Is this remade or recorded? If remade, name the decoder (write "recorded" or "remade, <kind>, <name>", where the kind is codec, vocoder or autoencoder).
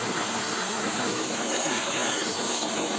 remade, codec, SNAC